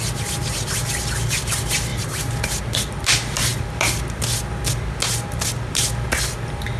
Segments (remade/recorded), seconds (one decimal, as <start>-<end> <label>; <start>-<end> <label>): 0.0-6.8 recorded